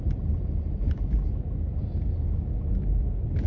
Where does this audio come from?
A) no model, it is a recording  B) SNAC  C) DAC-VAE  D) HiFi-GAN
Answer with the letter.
A